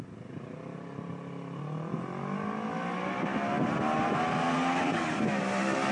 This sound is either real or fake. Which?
real